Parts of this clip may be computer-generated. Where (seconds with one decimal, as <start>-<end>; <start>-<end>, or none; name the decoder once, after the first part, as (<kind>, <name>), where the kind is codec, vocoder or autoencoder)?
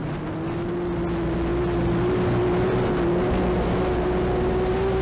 none